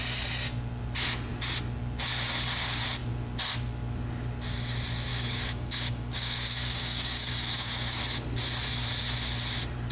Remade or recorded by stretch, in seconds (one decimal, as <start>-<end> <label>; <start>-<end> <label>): 0.0-5.1 recorded; 5.1-8.0 remade; 8.0-9.9 recorded